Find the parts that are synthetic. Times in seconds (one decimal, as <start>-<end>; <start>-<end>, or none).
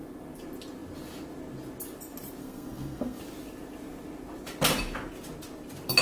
2.4-3.2